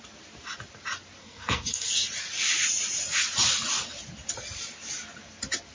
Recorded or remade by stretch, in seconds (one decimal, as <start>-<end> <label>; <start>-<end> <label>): 0.0-1.2 recorded; 1.2-1.9 remade; 1.9-5.7 recorded